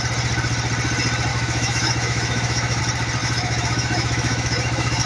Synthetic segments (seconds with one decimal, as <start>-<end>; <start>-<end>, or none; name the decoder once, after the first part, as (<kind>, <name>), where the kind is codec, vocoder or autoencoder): 1.3-2.8 (autoencoder, DAC-VAE); 3.2-5.1